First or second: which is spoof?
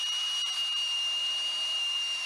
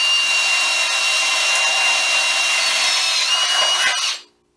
first